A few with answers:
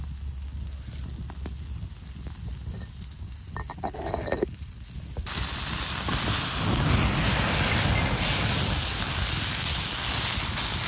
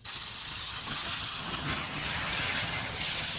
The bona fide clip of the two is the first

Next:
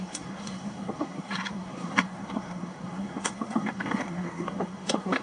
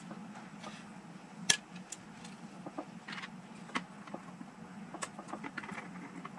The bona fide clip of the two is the second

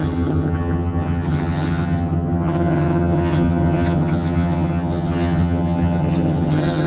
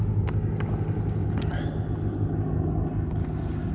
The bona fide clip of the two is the second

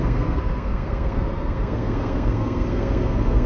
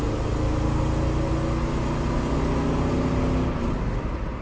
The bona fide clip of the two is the second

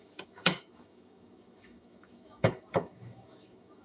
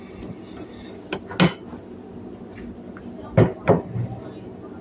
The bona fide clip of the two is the second